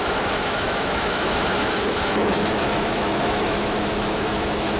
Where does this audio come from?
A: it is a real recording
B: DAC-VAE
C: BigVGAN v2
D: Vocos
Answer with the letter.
B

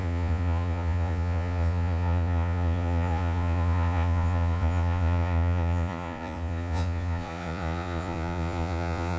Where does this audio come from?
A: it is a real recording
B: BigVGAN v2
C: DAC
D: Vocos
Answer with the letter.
D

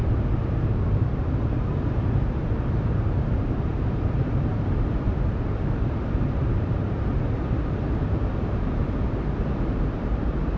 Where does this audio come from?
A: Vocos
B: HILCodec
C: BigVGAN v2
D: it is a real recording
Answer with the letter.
C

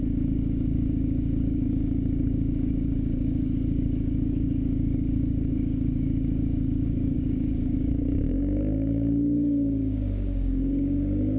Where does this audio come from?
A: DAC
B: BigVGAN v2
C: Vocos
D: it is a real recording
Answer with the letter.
A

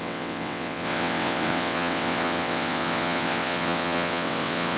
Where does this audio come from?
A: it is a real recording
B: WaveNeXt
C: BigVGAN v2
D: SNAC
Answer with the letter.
B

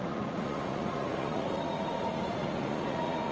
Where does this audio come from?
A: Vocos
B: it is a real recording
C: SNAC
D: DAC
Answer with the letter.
A